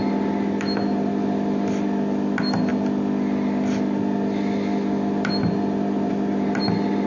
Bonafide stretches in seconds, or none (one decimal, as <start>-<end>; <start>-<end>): 0.0-7.1